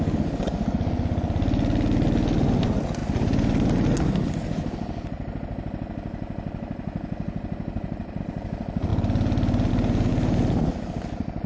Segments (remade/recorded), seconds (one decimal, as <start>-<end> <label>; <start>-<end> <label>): 0.0-11.5 recorded